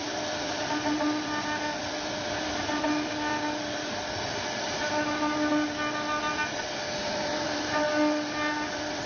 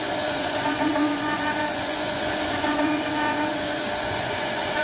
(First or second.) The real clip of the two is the first